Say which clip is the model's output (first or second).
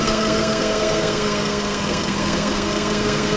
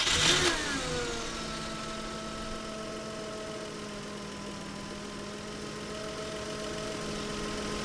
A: first